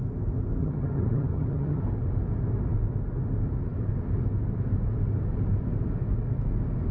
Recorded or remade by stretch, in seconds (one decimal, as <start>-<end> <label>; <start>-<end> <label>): 0.0-0.6 recorded; 0.6-1.8 remade; 1.8-6.9 recorded